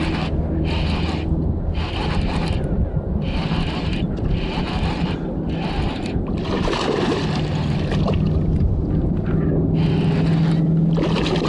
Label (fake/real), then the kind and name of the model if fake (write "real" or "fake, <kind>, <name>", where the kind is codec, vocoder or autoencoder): real